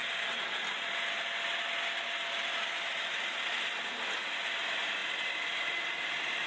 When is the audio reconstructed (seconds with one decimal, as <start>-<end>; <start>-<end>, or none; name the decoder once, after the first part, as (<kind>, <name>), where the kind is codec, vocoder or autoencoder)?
none